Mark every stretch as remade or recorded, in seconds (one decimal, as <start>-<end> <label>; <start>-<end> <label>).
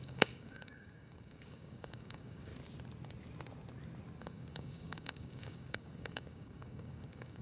0.0-2.5 remade; 2.5-4.2 recorded; 4.2-7.4 remade